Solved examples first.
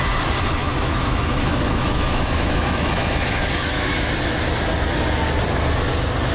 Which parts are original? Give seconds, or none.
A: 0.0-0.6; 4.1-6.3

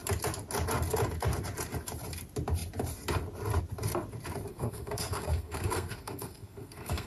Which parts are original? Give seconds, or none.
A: 0.0-4.5

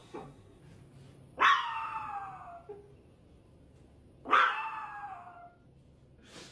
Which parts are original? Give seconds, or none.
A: 0.6-6.5

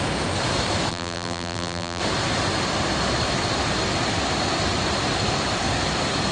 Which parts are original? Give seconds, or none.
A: 0.0-0.9; 2.0-6.3

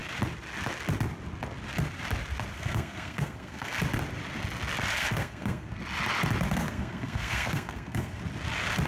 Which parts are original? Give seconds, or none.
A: 0.0-2.5; 3.8-4.9; 5.8-6.6; 8.2-8.9

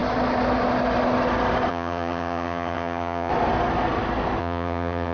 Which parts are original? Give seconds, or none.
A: 0.0-1.7; 3.3-4.4

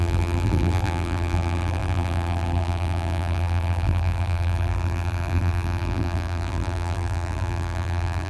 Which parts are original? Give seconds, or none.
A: none